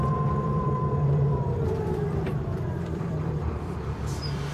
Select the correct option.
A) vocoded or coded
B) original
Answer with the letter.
A